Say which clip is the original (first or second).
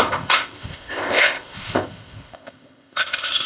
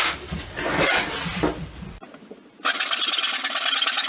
second